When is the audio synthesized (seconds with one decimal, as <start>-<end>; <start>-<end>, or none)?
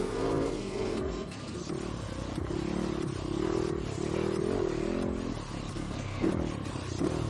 0.0-1.6; 5.7-6.3